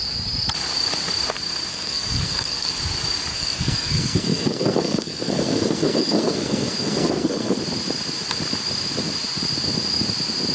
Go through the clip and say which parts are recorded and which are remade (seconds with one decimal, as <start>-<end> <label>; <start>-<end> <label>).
0.0-1.7 recorded; 1.7-2.7 remade; 2.7-3.3 recorded; 3.3-7.6 remade; 7.6-10.5 recorded

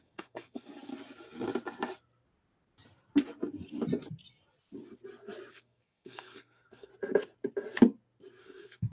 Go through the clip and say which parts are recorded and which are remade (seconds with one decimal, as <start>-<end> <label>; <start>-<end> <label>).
0.0-0.9 remade; 0.9-5.5 recorded; 5.5-6.9 remade; 6.9-8.4 recorded; 8.4-8.9 remade

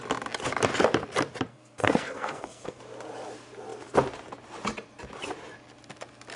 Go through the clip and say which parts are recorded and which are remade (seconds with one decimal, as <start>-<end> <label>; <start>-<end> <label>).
0.0-1.5 recorded; 1.5-2.8 remade; 2.8-6.4 recorded